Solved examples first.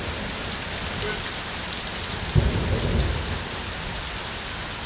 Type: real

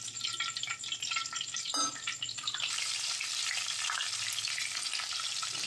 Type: real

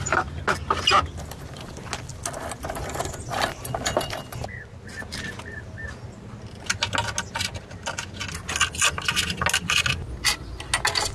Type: real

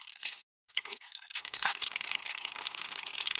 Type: fake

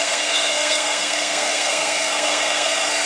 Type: fake